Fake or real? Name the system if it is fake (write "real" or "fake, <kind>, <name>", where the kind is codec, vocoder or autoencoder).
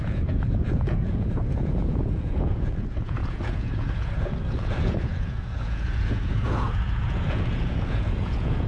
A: fake, vocoder, Vocos